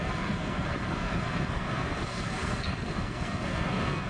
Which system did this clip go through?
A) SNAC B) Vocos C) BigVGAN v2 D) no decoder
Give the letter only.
A